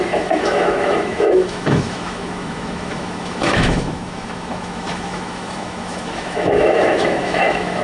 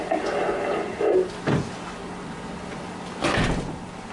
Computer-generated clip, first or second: first